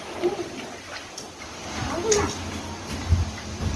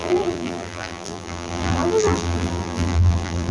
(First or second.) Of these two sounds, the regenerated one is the second